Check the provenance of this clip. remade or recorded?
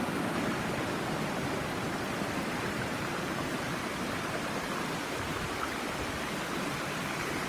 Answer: remade